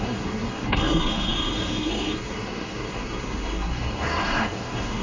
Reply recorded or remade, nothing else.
remade